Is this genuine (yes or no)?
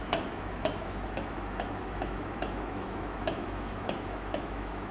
no